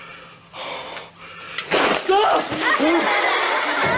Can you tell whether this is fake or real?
real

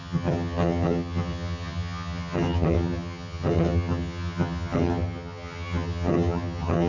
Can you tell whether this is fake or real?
fake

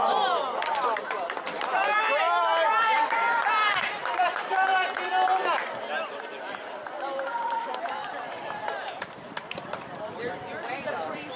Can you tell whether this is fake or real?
fake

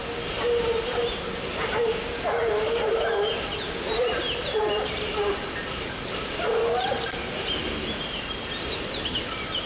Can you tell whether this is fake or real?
real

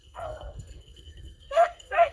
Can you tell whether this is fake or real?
fake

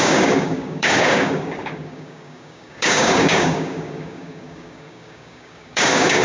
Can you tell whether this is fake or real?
fake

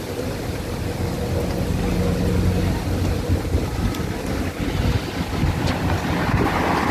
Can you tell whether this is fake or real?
real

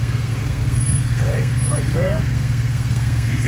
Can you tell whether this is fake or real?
fake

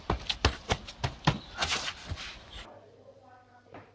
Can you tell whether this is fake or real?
real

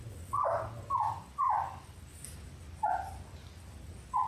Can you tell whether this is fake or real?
real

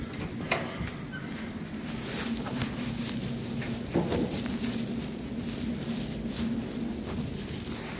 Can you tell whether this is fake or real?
real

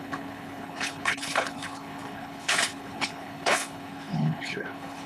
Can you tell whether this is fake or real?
fake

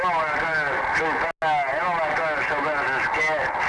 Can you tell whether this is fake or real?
real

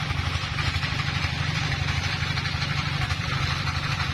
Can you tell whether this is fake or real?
fake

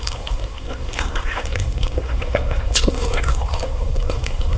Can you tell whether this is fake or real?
fake